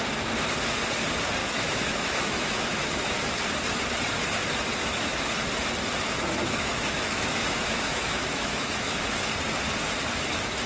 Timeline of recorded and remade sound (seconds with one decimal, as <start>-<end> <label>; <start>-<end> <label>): 0.0-1.4 recorded; 1.4-3.2 remade; 3.2-4.8 recorded; 4.8-5.3 remade; 5.3-6.4 recorded; 6.4-9.0 remade; 9.0-10.7 recorded